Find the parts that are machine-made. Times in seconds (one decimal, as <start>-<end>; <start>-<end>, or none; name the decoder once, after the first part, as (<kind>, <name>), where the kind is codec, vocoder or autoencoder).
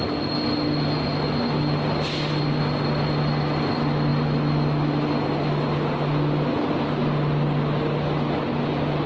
none